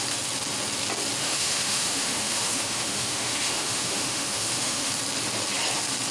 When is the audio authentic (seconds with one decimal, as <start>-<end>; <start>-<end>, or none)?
0.0-1.2; 4.9-6.1